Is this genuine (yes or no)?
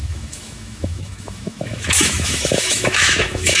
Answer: no